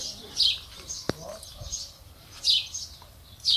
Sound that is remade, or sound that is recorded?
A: recorded